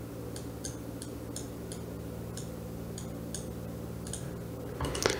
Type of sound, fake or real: real